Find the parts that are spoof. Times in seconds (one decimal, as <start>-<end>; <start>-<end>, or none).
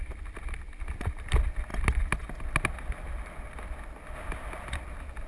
none